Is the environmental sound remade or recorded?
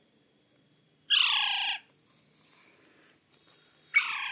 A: remade